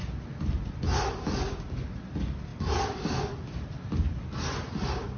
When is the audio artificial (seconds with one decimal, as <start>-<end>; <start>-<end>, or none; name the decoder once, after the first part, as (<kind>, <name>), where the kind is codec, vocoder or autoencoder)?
2.5-4.2 (vocoder, BigVGAN v2)